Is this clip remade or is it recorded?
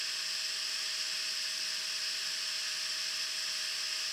recorded